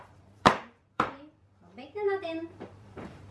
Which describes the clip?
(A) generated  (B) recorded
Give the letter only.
A